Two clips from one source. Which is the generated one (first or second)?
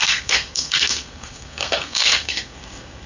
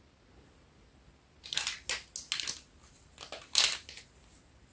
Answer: first